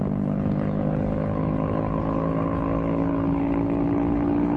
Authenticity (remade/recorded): remade